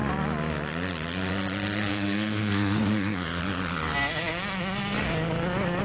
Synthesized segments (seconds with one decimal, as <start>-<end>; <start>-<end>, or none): 1.9-3.4